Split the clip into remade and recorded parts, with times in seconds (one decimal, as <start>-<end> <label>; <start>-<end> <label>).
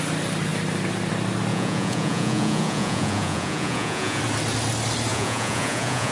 0.0-1.5 recorded; 1.5-4.2 remade; 4.2-5.1 recorded; 5.1-6.1 remade